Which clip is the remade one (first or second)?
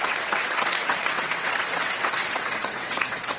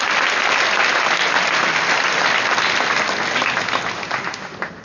first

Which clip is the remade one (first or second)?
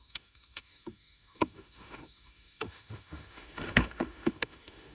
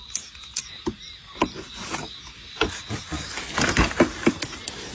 first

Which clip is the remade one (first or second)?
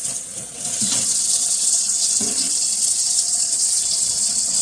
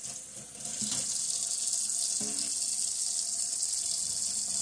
first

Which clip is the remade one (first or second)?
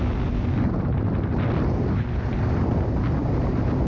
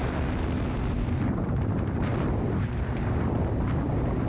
second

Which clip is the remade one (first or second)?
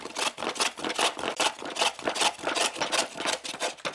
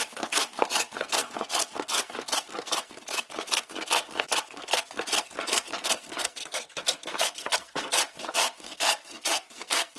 second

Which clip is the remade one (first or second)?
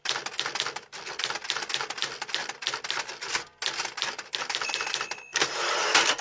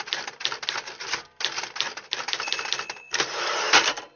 second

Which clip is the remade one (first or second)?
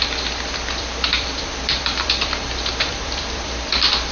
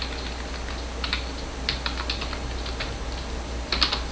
first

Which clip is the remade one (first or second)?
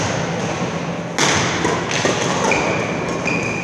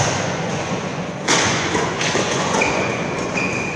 second